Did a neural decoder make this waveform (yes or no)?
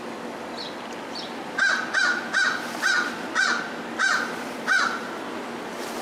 no